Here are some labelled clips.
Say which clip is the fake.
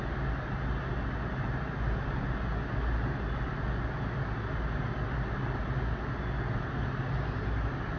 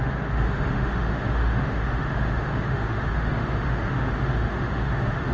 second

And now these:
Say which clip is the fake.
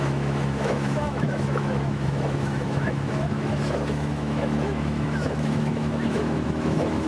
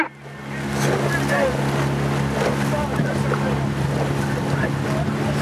first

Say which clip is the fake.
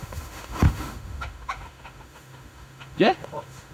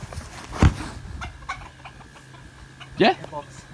first